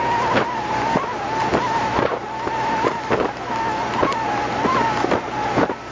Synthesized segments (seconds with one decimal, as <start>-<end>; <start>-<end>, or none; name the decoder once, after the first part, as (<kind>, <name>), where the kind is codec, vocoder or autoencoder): none